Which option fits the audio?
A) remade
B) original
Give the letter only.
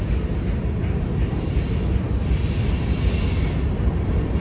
B